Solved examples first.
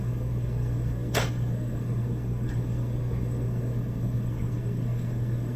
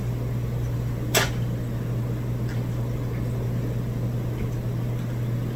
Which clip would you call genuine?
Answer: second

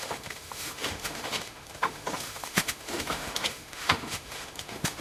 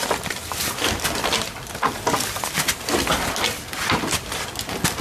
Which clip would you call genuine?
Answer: second